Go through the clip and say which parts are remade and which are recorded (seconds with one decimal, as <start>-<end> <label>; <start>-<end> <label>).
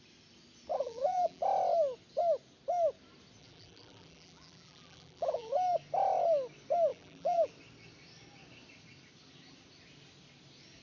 0.0-0.7 recorded; 0.7-1.4 remade; 1.4-3.4 recorded; 3.4-5.5 remade; 5.5-6.9 recorded; 6.9-7.5 remade; 7.5-10.8 recorded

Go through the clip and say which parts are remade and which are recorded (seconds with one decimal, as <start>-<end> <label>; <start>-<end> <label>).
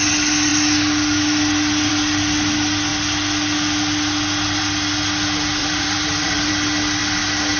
0.0-5.6 recorded; 5.6-6.5 remade; 6.5-7.6 recorded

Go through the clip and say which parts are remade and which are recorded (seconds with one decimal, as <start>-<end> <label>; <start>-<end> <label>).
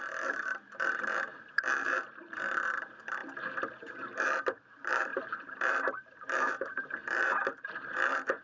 0.0-3.2 remade; 3.2-3.8 recorded; 3.8-8.4 remade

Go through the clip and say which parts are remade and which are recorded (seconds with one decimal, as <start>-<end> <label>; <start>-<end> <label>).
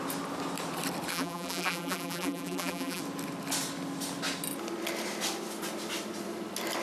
0.0-1.1 recorded; 1.1-3.0 remade; 3.0-6.8 recorded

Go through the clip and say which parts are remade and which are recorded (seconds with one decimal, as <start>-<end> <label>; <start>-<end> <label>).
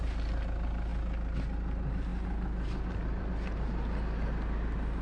0.0-5.0 recorded